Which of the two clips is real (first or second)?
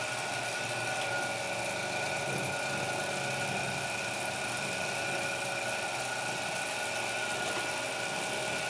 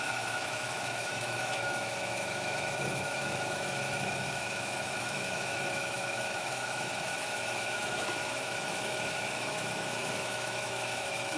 first